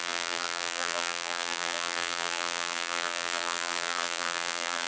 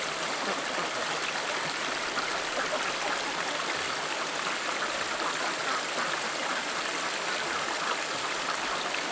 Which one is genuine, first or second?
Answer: second